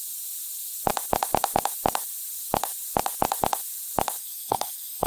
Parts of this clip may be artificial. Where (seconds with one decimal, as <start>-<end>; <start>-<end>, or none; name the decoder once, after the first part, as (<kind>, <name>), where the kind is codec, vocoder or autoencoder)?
4.2-5.1 (codec, SNAC)